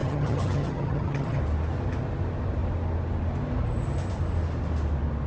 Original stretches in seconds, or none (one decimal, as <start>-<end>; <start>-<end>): 1.4-5.3